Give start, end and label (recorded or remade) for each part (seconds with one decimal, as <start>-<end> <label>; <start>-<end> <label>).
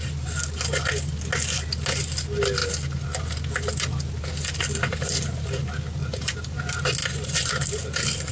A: 0.0-6.0 recorded; 6.0-6.6 remade; 6.6-8.3 recorded